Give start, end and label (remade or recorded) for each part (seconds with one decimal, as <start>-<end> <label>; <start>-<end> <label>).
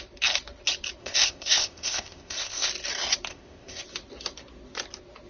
0.0-1.0 recorded; 1.0-2.7 remade; 2.7-3.3 recorded; 3.3-3.8 remade; 3.8-5.3 recorded